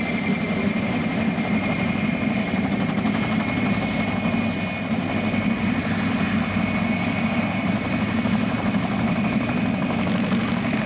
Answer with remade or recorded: recorded